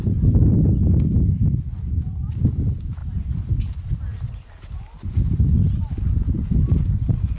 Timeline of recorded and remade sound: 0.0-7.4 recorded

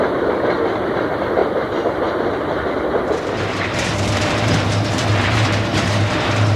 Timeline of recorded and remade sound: 0.0-6.6 remade

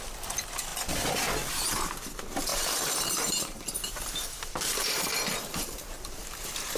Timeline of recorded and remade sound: 0.0-2.5 recorded; 2.5-6.8 remade

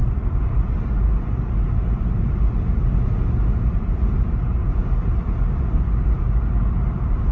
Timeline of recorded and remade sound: 0.0-0.8 remade; 0.8-4.6 recorded; 4.6-5.8 remade; 5.8-7.3 recorded

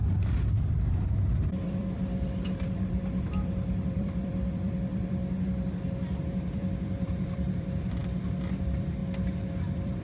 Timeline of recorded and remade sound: 0.0-5.2 remade; 5.2-6.2 recorded; 6.2-8.0 remade; 8.0-8.6 recorded; 8.6-9.0 remade; 9.0-9.6 recorded; 9.6-10.0 remade

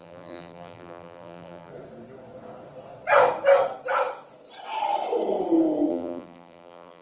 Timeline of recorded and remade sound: 0.0-1.7 remade; 1.7-5.9 recorded; 5.9-7.0 remade